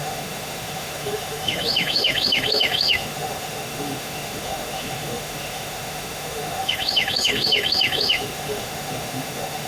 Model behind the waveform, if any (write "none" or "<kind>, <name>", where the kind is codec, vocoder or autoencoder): autoencoder, DAC-VAE